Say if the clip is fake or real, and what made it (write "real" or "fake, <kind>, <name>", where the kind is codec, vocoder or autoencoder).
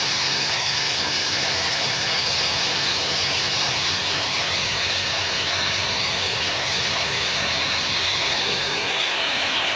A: fake, codec, SNAC